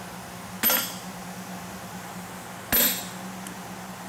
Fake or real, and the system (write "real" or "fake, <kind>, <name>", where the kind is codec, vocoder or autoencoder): real